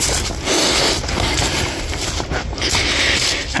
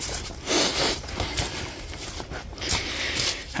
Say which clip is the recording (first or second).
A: first